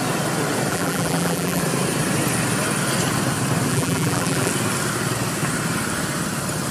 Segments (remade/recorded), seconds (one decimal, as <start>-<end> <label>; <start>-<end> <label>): 0.0-0.7 recorded; 0.7-1.6 remade; 1.6-3.7 recorded; 3.7-4.5 remade; 4.5-6.7 recorded